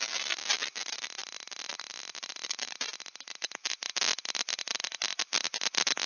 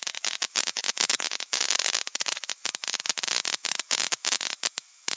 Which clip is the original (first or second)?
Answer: first